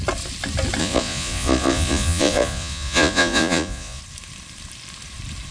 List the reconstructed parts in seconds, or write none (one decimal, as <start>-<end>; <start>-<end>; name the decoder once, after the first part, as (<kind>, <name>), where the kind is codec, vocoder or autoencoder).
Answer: 0.8-4.0 (vocoder, Vocos)